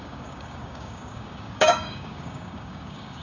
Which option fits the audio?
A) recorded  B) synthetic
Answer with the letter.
B